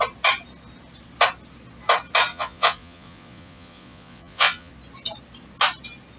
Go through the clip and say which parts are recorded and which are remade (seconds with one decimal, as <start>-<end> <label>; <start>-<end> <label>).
0.0-2.3 recorded; 2.3-4.7 remade; 4.7-6.2 recorded